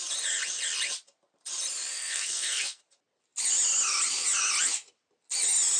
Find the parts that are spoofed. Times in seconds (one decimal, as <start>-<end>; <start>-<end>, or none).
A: 1.9-2.8